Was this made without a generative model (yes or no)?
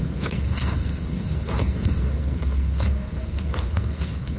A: no